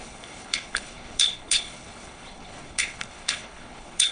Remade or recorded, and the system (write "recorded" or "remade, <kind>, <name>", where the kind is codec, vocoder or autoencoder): remade, codec, HILCodec